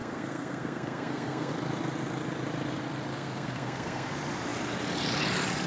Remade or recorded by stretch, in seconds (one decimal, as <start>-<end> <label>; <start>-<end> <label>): 0.0-1.5 remade; 1.5-3.1 recorded; 3.1-4.1 remade; 4.1-5.7 recorded